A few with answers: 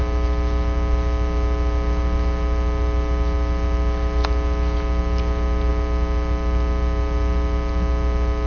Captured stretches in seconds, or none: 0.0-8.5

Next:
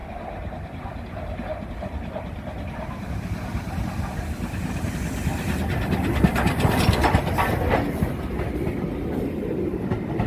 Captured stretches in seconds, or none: 4.9-10.3

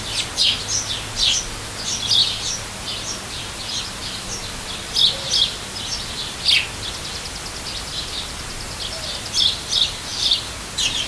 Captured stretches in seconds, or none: 0.0-2.2; 4.3-10.1